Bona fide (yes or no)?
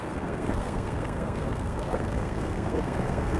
no